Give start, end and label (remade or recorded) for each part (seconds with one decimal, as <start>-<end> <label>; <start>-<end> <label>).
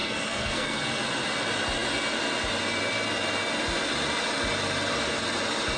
0.0-0.8 remade; 0.8-5.8 recorded